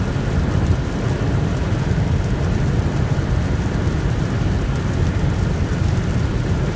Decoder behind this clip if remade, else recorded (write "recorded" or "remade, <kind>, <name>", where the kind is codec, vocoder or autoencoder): recorded